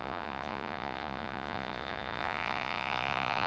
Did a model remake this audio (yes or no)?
yes